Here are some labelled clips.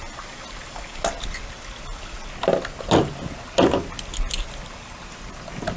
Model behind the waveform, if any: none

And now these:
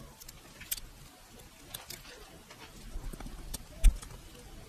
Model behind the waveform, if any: none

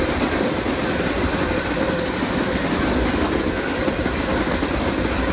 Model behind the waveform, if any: none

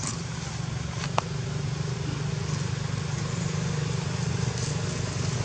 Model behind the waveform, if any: none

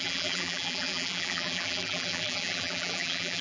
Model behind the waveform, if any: vocoder, BigVGAN v2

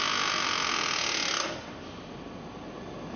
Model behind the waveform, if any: none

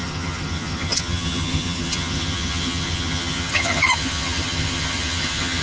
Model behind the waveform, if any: vocoder, HiFi-GAN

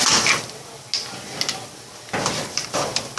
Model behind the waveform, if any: none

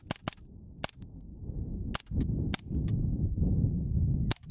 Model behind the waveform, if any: none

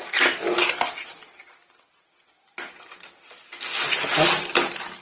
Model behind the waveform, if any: none